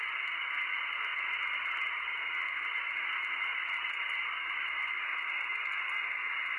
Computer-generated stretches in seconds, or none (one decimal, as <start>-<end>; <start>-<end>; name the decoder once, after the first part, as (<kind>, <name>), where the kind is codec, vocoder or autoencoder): none